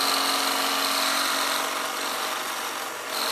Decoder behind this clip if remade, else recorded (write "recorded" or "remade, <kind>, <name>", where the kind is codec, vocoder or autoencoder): recorded